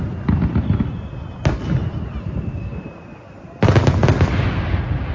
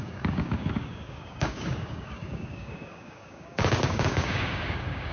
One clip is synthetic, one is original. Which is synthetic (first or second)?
second